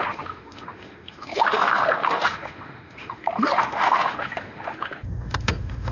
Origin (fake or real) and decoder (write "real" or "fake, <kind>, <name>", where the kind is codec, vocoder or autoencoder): fake, autoencoder, DAC-VAE